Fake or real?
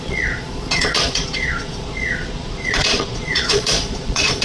fake